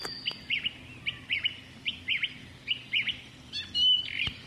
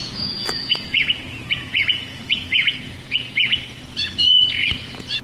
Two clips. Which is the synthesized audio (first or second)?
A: second